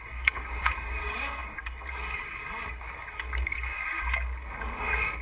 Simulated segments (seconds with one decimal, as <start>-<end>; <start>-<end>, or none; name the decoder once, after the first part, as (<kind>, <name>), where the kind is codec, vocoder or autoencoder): 0.0-5.2 (codec, DAC)